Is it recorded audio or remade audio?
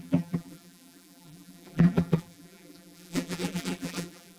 remade